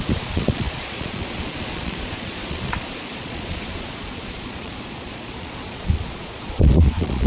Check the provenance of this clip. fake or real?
fake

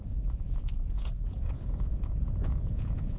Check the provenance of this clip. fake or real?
fake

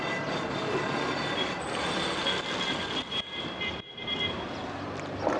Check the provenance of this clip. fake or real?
real